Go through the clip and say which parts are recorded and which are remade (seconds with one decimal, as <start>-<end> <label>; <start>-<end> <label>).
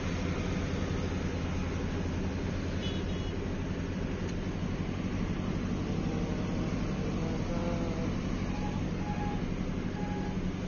0.0-10.7 recorded